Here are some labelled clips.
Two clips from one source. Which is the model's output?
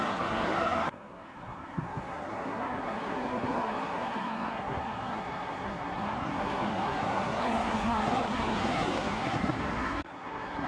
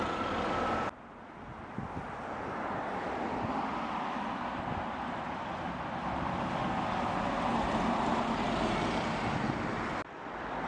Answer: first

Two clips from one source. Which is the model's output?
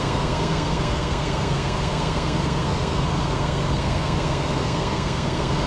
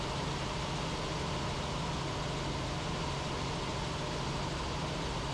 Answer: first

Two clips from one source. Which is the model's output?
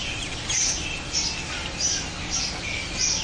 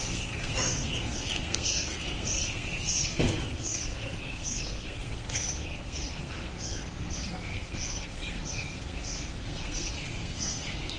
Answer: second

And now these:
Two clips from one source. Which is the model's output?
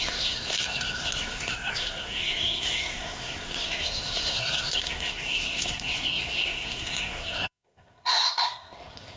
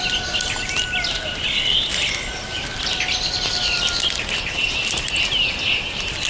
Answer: first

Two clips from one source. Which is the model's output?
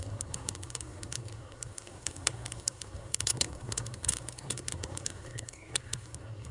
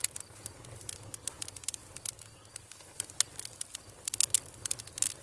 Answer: first